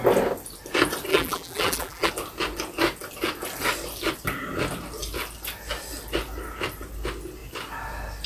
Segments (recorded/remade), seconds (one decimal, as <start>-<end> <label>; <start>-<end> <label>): 0.0-1.1 recorded; 1.1-2.1 remade; 2.1-8.3 recorded